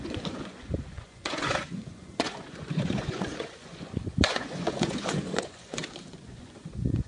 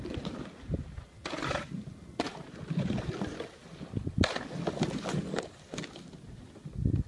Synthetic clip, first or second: first